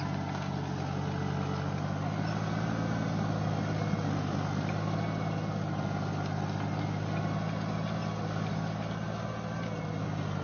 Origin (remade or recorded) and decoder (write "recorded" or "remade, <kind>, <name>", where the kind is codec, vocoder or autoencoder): recorded